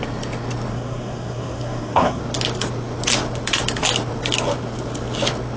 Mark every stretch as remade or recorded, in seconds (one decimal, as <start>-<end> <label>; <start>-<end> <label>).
0.0-0.7 recorded; 0.7-2.2 remade; 2.2-5.6 recorded